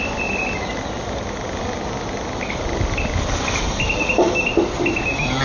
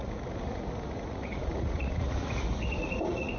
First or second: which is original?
first